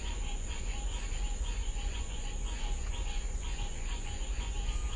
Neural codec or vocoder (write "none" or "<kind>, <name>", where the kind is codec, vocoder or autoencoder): vocoder, Vocos